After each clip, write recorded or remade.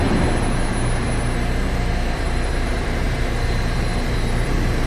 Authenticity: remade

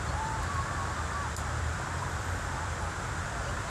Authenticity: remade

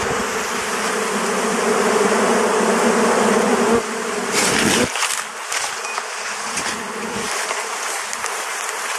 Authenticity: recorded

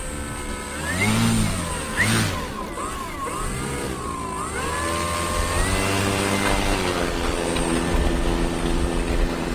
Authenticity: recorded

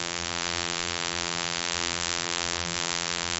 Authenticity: remade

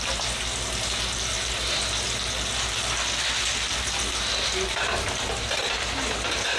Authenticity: recorded